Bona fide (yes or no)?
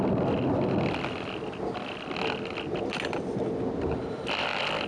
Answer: yes